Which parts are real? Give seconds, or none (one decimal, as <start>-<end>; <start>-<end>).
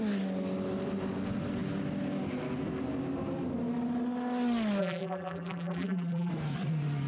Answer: 0.0-4.8; 6.3-7.1